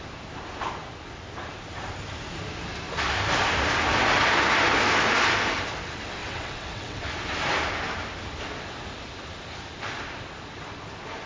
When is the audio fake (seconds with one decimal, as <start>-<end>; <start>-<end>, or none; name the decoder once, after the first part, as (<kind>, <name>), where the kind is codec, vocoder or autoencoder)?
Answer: 6.2-7.0 (vocoder, WaveNeXt)